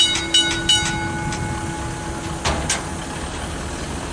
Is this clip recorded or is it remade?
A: recorded